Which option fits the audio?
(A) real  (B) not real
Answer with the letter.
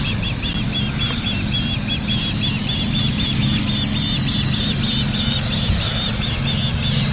A